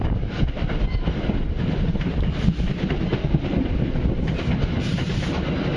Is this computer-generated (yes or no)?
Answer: no